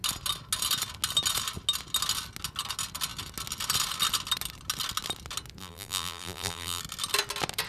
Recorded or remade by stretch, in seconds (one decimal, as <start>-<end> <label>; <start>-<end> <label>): 0.0-5.6 recorded; 5.6-6.8 remade; 6.8-7.7 recorded